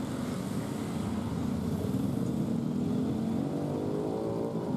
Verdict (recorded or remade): recorded